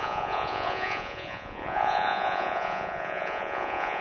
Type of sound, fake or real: fake